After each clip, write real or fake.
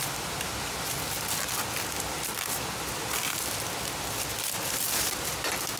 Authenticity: real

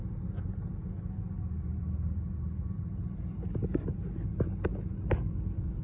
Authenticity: real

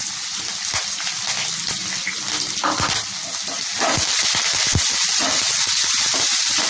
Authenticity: real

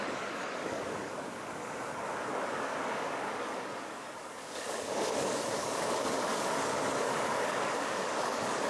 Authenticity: fake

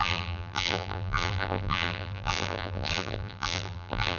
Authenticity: fake